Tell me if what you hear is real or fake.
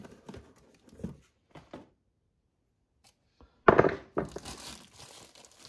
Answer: real